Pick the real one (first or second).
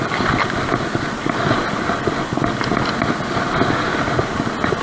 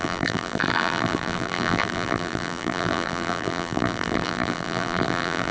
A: first